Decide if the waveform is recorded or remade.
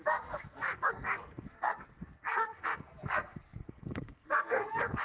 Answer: remade